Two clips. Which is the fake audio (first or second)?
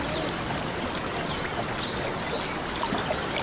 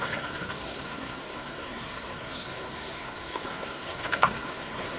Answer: second